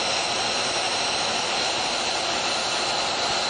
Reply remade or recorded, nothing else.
recorded